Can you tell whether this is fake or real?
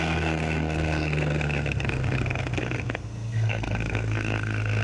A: fake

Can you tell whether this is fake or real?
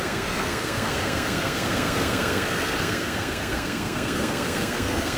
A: fake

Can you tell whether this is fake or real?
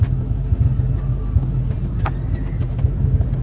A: real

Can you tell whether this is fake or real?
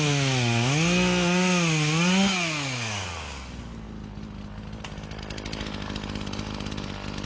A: real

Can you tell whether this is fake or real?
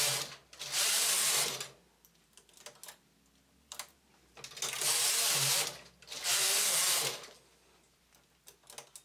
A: real